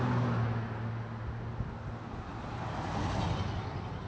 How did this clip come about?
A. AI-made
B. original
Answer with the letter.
B